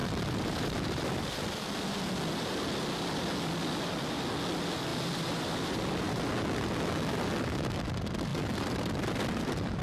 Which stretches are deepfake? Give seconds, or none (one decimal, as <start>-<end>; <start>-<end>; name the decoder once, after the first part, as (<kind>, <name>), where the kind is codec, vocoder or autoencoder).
0.0-1.3 (vocoder, BigVGAN v2); 4.9-6.3; 8.3-9.8